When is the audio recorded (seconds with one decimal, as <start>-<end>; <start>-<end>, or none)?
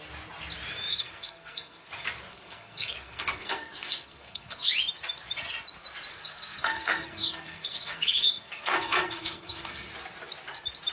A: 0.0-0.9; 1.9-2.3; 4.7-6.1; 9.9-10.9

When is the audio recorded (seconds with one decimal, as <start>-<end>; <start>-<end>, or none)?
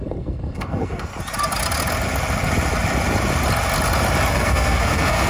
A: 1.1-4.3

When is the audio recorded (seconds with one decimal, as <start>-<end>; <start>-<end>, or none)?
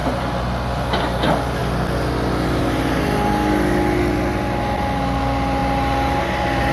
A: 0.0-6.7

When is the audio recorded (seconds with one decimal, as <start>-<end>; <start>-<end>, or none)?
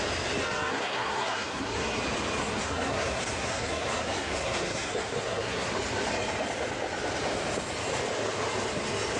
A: 0.0-0.7; 2.0-2.4; 5.7-9.2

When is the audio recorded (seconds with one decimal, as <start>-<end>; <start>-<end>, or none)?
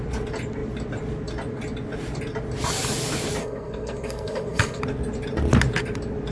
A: 0.0-3.4; 4.8-6.3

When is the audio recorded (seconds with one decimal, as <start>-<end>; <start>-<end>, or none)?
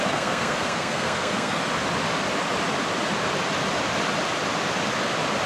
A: 1.6-5.5